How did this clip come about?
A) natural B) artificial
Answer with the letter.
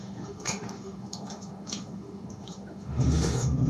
B